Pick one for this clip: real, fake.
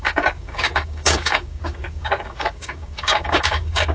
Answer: fake